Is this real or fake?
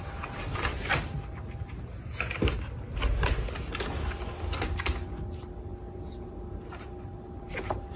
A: real